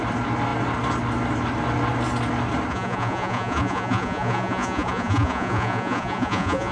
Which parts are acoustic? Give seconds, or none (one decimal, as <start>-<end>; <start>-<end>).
0.0-2.7